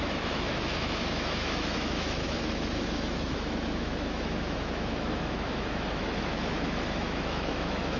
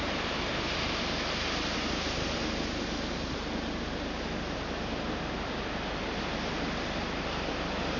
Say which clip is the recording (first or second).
second